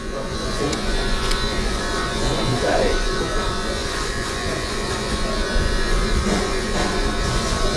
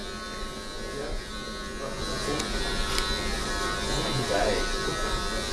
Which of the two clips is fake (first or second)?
first